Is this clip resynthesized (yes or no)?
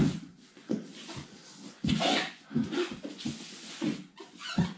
yes